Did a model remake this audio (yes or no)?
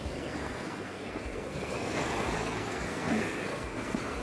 yes